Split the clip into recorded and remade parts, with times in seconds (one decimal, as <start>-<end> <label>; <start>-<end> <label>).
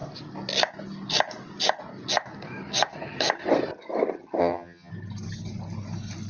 0.0-4.4 recorded; 4.4-4.9 remade; 4.9-6.3 recorded